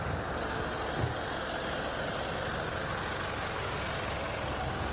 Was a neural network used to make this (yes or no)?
no